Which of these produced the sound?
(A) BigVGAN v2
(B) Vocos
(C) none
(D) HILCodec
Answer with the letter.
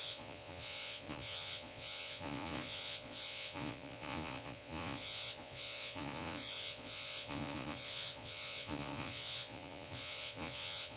B